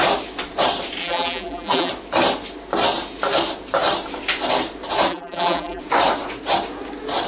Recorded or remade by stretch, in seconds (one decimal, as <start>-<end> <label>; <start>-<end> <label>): 0.0-1.0 recorded; 1.0-1.9 remade; 1.9-5.1 recorded; 5.1-5.8 remade; 5.8-7.3 recorded